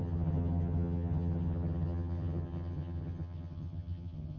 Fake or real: fake